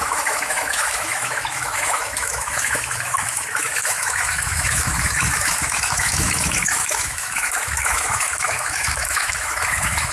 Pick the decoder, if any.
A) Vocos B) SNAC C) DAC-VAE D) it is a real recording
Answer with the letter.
C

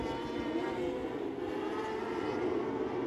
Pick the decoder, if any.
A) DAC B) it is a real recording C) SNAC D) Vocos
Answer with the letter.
B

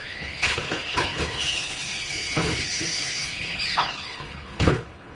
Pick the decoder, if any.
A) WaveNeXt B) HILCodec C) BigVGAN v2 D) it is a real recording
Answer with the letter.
B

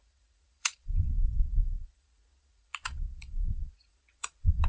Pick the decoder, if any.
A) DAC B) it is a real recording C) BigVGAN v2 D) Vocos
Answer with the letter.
D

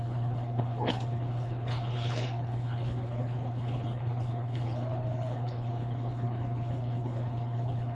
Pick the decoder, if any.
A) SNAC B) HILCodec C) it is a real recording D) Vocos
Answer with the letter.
B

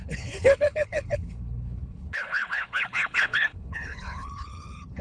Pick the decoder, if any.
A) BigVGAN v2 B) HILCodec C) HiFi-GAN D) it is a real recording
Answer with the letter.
B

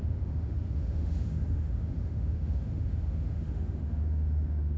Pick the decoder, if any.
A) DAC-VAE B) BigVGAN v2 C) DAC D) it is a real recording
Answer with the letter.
A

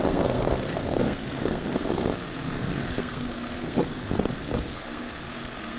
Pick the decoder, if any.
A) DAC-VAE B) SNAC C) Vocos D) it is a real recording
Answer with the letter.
B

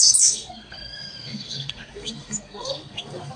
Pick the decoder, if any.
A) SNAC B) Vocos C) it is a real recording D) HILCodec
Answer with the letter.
A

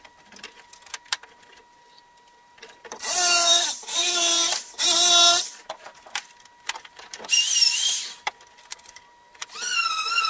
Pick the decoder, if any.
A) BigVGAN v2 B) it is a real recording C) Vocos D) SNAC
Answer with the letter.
A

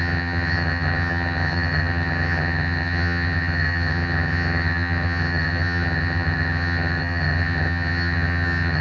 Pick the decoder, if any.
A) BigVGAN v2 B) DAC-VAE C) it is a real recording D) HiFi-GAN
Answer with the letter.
D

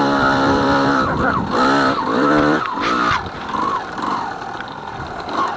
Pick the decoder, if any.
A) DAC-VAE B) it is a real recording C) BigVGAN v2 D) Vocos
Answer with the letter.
C